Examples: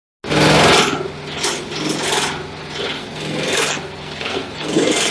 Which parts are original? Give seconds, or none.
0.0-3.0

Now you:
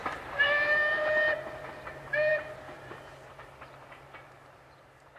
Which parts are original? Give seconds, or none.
0.0-5.2

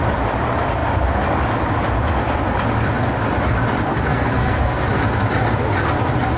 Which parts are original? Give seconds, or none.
0.0-3.9; 5.0-6.4

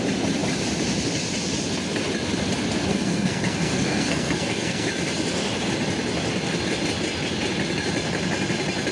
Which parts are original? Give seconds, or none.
0.0-2.9; 4.9-8.9